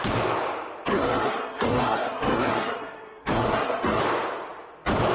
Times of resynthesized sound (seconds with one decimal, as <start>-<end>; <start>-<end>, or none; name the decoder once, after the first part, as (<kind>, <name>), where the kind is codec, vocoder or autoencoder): 0.9-4.0 (codec, SNAC)

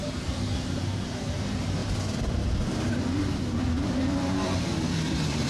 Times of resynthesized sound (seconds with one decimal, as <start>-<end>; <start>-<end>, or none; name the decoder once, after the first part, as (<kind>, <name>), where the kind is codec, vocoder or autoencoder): 0.0-1.8 (vocoder, BigVGAN v2); 2.7-5.5

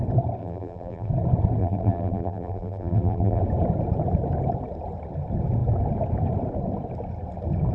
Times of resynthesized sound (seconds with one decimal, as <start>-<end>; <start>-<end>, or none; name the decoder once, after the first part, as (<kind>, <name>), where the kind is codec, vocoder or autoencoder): 0.4-1.1 (vocoder, BigVGAN v2); 1.6-3.4

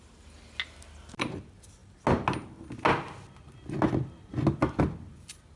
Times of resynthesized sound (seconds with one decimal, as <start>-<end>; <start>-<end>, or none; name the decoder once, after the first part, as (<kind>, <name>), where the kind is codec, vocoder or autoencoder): none

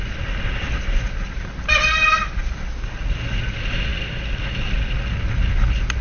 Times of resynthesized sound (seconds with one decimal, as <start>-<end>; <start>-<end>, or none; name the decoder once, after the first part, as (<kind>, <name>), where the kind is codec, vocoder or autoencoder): none